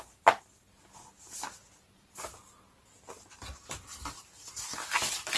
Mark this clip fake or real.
real